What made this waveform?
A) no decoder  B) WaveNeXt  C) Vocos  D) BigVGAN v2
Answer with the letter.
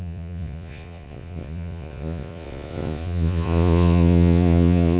C